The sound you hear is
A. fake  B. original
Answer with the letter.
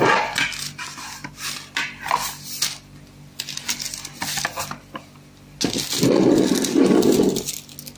B